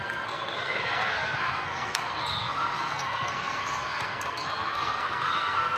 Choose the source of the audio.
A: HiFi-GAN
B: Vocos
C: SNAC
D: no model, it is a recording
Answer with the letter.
C